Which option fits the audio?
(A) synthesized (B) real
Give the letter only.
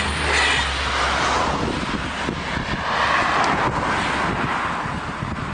B